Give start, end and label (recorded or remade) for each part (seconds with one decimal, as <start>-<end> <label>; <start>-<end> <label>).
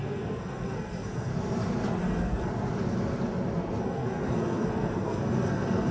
0.0-1.3 remade; 1.3-2.0 recorded; 2.0-2.5 remade; 2.5-3.8 recorded; 3.8-5.9 remade